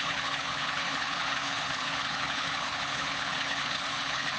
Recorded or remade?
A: remade